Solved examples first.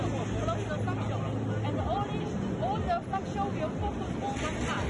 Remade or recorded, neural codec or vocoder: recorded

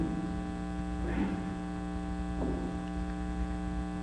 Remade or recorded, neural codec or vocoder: recorded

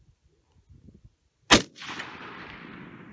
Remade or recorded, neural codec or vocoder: recorded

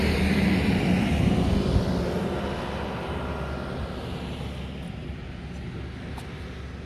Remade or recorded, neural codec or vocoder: recorded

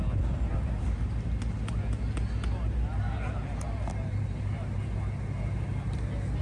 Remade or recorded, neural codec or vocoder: recorded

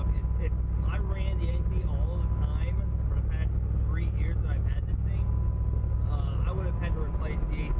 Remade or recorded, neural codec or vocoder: recorded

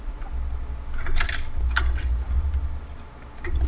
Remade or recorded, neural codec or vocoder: recorded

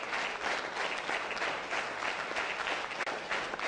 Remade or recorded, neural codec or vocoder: recorded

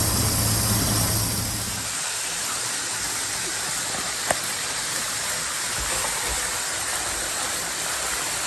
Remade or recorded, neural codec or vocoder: recorded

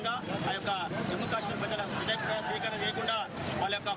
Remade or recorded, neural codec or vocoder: recorded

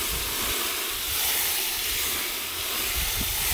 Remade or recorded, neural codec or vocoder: recorded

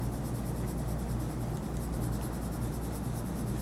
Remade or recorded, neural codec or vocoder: recorded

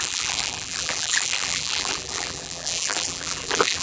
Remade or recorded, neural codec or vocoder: remade, vocoder, BigVGAN v2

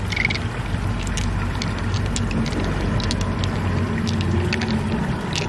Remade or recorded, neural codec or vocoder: recorded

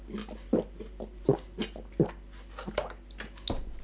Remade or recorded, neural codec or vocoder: recorded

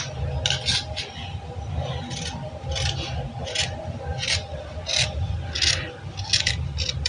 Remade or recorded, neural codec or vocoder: recorded